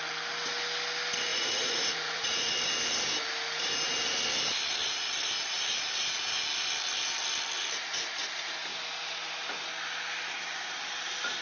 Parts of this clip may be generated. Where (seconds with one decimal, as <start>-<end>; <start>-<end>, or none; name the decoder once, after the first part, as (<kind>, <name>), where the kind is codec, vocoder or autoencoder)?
1.3-2.5 (vocoder, Vocos)